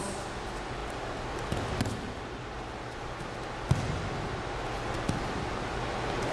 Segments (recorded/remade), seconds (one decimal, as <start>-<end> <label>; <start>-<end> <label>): 0.0-6.3 recorded